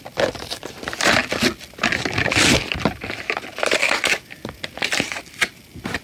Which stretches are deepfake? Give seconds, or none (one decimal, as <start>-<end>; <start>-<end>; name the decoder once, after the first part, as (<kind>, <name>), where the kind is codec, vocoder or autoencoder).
0.0-6.0 (vocoder, BigVGAN v2)